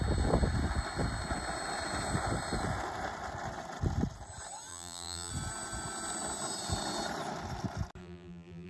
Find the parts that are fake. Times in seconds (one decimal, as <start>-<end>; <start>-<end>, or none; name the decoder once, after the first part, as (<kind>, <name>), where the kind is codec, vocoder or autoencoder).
4.7-5.3 (vocoder, BigVGAN v2); 8.0-8.7